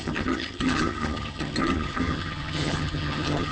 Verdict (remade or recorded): remade